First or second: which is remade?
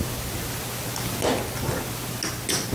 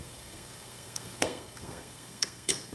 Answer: second